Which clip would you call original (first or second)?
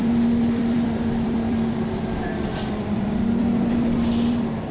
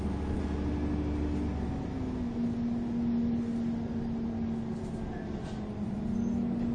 second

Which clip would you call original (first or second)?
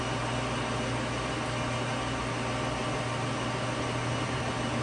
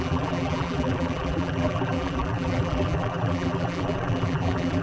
first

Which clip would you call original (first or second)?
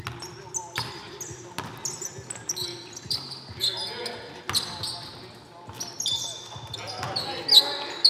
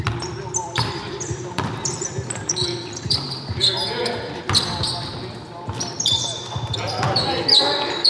first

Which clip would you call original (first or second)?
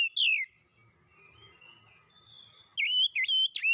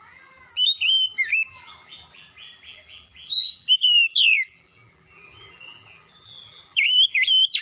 first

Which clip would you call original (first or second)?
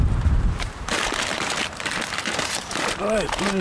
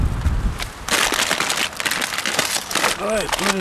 second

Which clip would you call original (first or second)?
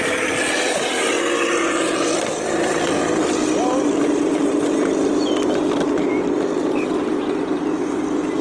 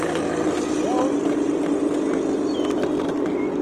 second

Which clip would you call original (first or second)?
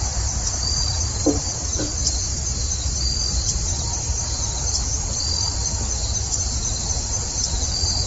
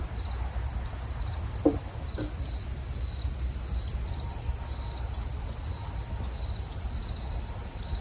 second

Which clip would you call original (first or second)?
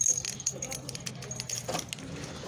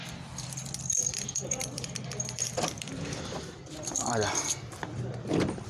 first